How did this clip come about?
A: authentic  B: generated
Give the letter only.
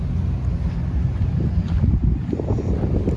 A